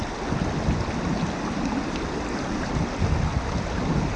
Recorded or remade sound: recorded